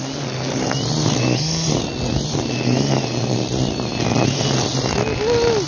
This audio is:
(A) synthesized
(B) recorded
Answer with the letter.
B